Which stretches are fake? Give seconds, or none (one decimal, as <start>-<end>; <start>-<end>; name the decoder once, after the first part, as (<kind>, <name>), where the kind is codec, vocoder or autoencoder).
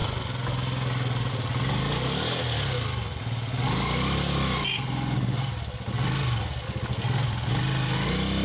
6.9-7.5 (codec, SNAC)